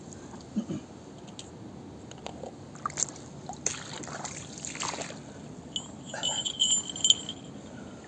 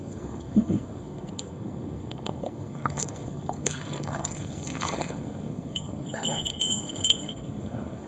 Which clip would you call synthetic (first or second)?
second